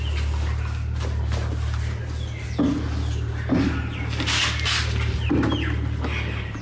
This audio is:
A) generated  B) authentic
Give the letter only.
B